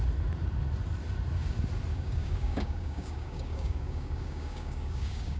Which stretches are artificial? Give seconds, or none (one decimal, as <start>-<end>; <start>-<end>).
1.9-5.4

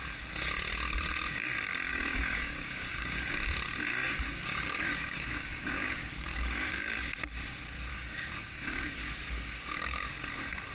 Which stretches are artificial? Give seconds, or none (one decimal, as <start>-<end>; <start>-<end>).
1.9-3.3; 3.9-6.9; 7.9-10.1

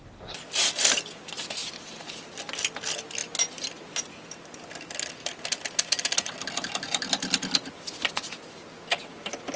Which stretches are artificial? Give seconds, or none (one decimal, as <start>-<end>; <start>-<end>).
none

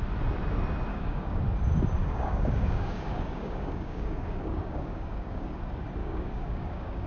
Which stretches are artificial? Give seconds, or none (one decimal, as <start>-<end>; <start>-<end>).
0.9-1.4; 2.0-5.6; 6.0-7.1

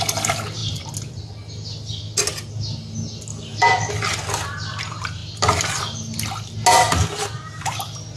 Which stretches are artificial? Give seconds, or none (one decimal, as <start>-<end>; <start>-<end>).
3.3-3.9

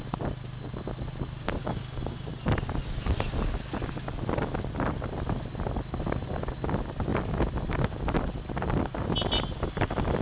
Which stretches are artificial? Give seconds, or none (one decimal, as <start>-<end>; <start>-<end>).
1.6-2.4

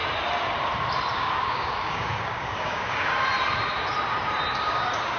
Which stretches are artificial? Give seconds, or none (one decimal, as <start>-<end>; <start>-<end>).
1.1-3.1; 4.5-5.2

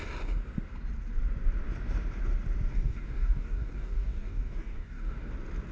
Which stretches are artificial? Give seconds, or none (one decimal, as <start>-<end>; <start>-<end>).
2.7-5.3